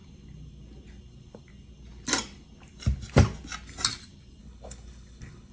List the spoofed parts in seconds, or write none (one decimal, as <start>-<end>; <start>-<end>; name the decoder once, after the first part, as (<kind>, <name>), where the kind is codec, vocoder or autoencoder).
4.4-5.5 (codec, HILCodec)